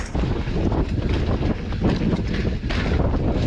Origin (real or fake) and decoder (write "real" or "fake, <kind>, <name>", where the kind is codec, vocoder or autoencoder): real